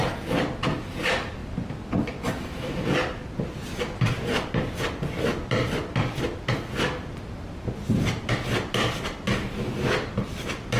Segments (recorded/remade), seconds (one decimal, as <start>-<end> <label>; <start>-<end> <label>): 0.0-10.8 recorded